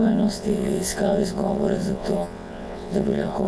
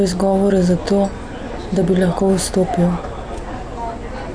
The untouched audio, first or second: second